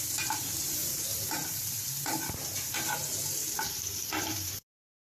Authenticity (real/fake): fake